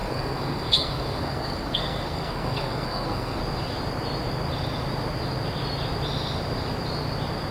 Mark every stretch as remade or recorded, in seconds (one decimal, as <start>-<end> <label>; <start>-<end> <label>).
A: 0.0-3.4 remade; 3.4-7.5 recorded